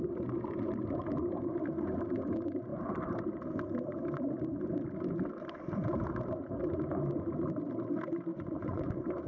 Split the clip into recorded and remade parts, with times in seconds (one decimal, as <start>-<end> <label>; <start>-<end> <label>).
0.0-8.3 recorded; 8.3-8.9 remade; 8.9-9.3 recorded